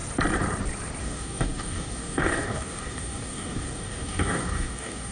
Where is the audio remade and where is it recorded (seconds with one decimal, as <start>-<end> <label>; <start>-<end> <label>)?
0.0-1.0 recorded; 1.0-5.1 remade